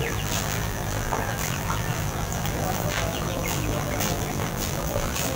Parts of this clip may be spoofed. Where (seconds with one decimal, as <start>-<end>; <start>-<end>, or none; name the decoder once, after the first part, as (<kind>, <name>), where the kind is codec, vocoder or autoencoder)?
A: 0.0-5.4 (vocoder, BigVGAN v2)